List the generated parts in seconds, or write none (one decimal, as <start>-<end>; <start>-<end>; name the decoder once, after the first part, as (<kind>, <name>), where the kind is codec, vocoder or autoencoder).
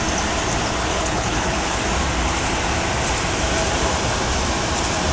0.9-1.8 (codec, HILCodec)